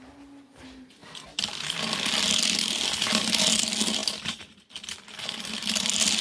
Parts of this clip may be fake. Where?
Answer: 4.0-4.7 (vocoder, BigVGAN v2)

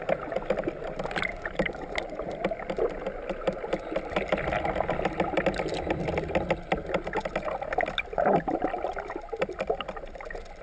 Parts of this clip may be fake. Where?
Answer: 1.3-2.8 (vocoder, BigVGAN v2)

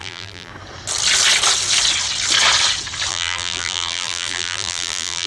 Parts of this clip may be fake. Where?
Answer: 0.0-0.5 (vocoder, BigVGAN v2); 3.1-5.3

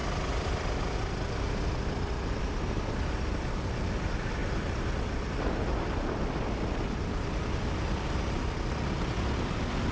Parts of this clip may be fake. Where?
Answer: none